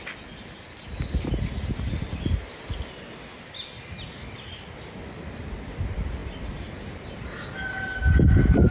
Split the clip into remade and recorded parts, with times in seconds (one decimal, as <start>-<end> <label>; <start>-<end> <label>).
0.0-8.7 recorded